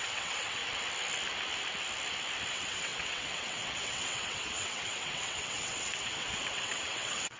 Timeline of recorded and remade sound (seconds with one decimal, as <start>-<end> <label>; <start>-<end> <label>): 0.0-0.6 remade; 0.6-2.5 recorded; 2.5-7.4 remade